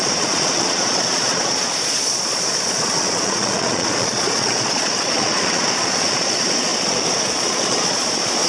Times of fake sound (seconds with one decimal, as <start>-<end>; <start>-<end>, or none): 0.0-8.5